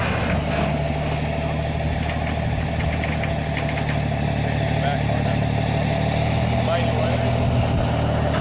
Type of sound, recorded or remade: recorded